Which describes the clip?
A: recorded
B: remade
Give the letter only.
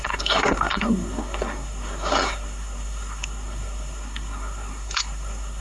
B